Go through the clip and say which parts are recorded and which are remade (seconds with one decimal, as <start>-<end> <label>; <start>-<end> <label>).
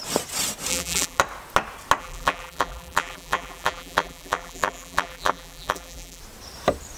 0.0-0.7 recorded; 0.7-1.2 remade; 1.2-2.0 recorded; 2.0-6.2 remade; 6.2-7.0 recorded